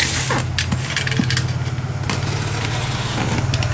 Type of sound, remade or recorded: recorded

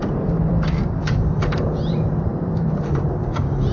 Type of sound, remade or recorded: remade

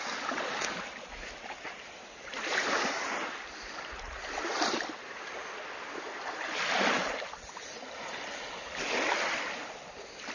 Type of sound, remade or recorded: recorded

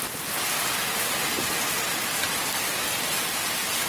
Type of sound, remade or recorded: recorded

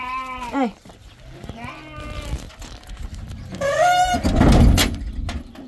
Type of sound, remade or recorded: recorded